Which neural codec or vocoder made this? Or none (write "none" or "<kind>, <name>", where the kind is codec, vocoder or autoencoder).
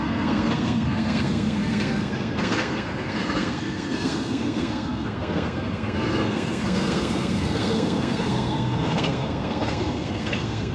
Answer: codec, SNAC